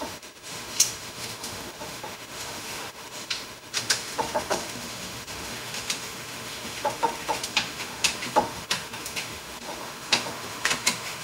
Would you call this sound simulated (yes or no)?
yes